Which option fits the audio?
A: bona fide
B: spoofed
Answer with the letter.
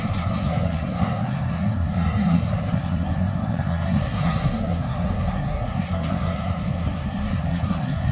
B